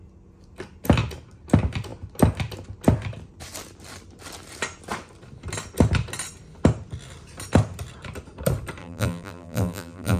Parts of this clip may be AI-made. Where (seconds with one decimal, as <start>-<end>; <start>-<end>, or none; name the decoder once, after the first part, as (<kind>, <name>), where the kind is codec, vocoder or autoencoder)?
8.8-10.2 (vocoder, BigVGAN v2)